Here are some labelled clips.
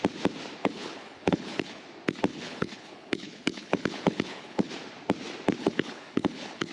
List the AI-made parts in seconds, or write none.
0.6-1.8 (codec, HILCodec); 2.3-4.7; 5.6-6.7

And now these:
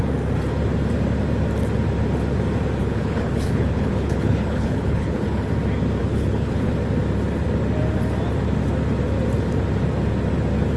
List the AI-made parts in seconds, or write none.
2.8-5.5 (codec, HILCodec); 6.0-6.7

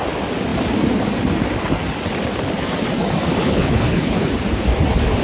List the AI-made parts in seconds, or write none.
3.4-4.3 (codec, HILCodec)